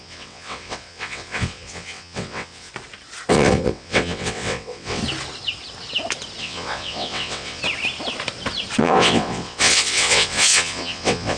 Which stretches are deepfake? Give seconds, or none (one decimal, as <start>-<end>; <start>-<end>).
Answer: 0.0-2.7; 3.3-5.0; 6.4-7.6; 8.8-11.4